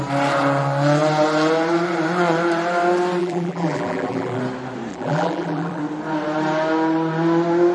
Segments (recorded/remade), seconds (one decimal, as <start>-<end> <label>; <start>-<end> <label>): 0.0-3.2 recorded; 3.2-4.4 remade; 4.4-4.9 recorded; 4.9-5.8 remade; 5.8-7.7 recorded